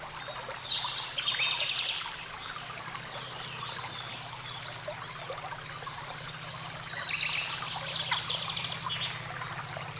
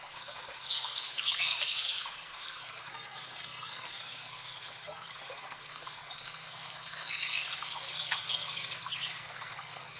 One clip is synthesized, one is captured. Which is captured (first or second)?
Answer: first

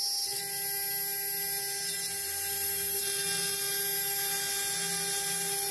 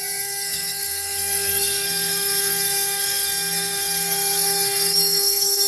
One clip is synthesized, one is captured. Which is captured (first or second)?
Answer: first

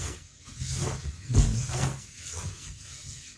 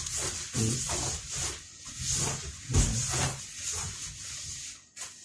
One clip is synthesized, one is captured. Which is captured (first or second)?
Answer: second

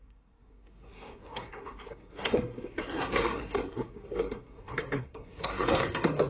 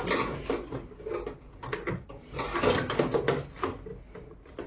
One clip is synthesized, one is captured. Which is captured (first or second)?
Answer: second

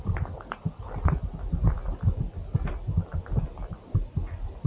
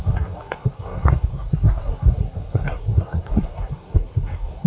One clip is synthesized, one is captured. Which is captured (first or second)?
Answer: first